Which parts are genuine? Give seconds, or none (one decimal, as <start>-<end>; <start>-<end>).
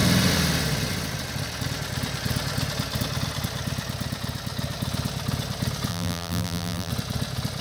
0.0-5.9; 6.9-7.6